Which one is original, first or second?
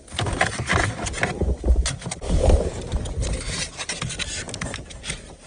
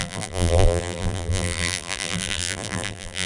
first